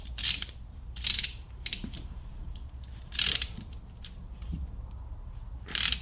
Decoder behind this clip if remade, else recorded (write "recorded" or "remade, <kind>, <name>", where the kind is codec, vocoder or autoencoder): remade, vocoder, BigVGAN v2